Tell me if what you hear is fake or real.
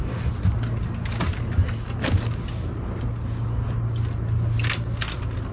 real